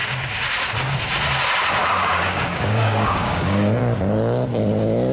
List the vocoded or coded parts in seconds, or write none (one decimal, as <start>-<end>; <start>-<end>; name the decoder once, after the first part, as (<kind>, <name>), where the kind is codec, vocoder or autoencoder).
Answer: 1.8-3.8 (codec, DAC)